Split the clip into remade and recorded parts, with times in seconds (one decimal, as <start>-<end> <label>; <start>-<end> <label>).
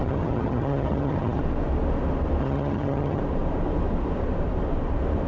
0.0-1.4 remade; 1.4-2.4 recorded; 2.4-3.2 remade; 3.2-5.3 recorded